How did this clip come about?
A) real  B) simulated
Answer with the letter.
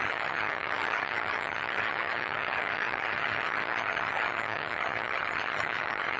B